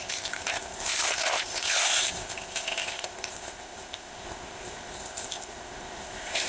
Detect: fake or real fake